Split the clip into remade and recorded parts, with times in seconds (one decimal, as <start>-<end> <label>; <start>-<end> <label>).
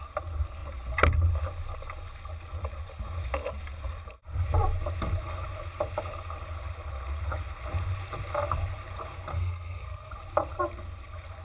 0.0-9.3 recorded; 9.3-10.1 remade; 10.1-11.4 recorded